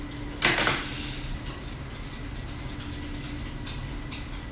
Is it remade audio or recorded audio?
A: recorded